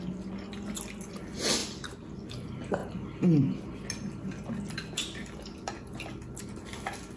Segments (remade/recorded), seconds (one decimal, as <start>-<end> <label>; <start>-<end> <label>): 0.0-1.6 recorded; 1.6-2.3 remade; 2.3-7.2 recorded